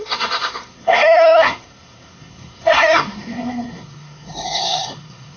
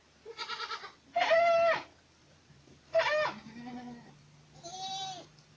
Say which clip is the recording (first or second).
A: second